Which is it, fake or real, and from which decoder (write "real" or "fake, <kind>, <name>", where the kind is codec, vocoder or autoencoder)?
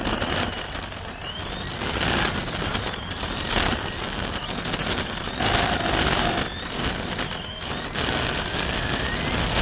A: real